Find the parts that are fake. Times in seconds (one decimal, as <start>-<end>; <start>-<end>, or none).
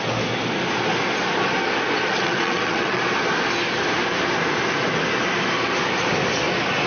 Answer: 2.1-3.0